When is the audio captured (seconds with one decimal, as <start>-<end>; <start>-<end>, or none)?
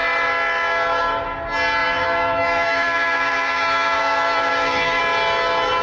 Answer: 0.0-1.8; 5.0-5.8